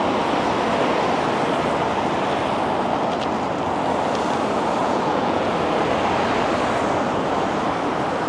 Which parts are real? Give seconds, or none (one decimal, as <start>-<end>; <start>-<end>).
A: 0.0-4.8; 5.5-8.3